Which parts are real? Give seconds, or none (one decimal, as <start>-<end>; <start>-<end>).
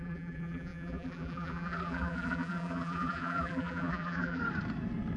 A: 4.4-5.2